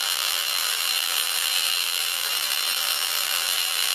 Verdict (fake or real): fake